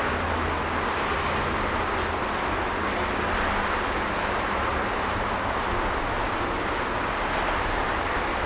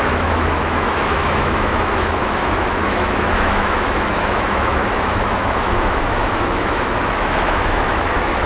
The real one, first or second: first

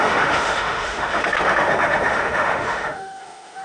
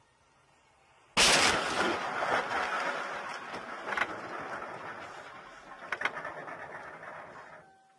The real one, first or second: second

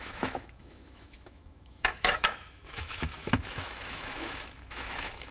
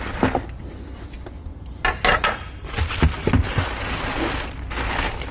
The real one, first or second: second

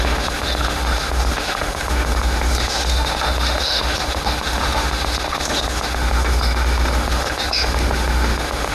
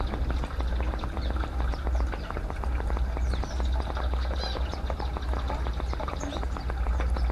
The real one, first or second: second